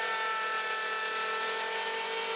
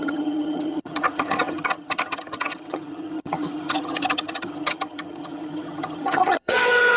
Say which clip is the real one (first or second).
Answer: first